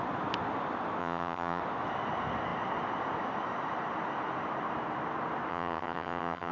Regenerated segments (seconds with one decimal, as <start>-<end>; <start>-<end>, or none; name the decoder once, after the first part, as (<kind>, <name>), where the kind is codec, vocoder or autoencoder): 1.0-1.6 (vocoder, HiFi-GAN); 5.5-6.5